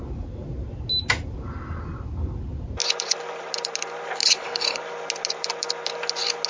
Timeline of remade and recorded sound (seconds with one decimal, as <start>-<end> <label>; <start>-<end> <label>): 0.0-4.2 recorded; 4.2-4.8 remade; 4.8-6.5 recorded